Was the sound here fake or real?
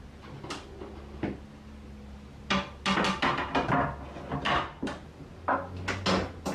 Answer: real